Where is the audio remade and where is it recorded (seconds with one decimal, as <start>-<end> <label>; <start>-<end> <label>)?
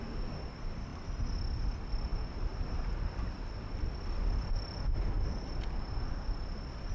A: 0.0-2.1 recorded; 2.1-3.6 remade; 3.6-6.9 recorded